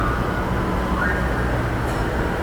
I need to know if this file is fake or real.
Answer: real